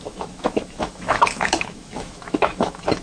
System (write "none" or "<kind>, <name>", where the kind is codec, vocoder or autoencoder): autoencoder, DAC-VAE